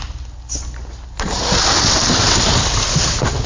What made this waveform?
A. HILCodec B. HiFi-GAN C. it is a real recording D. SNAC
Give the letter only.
C